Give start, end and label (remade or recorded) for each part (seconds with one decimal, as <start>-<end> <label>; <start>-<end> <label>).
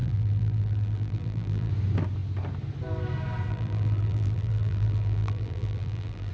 0.0-1.7 remade; 1.7-3.5 recorded; 3.5-6.3 remade